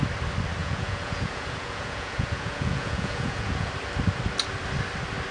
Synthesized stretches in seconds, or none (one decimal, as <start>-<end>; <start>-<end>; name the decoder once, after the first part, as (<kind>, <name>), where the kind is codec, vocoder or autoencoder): 0.6-3.7 (vocoder, Vocos)